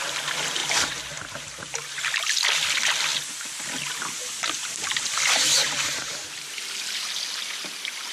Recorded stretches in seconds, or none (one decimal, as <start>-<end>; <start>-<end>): 0.0-0.6; 2.0-5.6; 6.3-8.1